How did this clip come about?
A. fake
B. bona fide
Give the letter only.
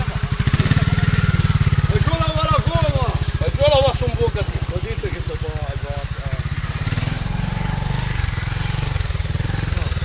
B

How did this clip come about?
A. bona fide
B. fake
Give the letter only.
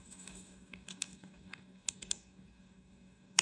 B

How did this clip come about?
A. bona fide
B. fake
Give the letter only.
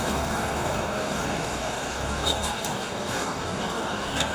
B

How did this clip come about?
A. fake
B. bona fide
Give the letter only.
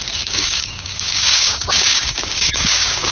A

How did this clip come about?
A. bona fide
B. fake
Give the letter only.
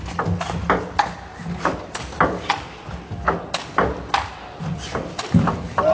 A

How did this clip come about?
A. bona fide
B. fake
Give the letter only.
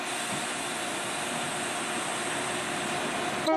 A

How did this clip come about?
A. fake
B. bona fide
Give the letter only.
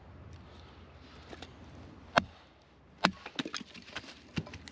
B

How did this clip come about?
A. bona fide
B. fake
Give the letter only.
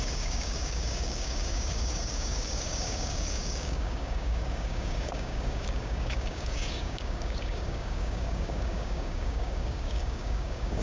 B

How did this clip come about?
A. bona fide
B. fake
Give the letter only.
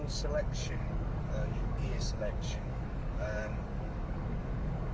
B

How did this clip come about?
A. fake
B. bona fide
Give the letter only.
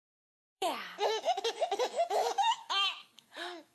A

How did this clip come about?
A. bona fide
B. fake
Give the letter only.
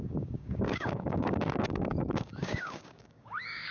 B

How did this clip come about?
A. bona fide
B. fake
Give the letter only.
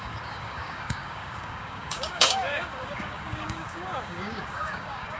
B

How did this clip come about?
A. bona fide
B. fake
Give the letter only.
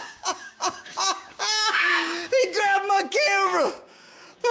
B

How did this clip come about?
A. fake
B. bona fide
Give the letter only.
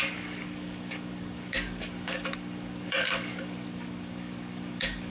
A